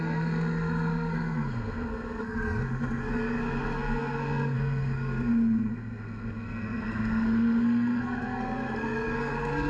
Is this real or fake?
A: fake